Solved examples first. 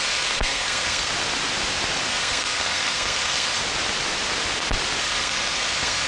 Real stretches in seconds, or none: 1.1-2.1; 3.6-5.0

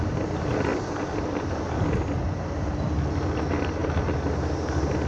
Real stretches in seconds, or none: 0.0-5.1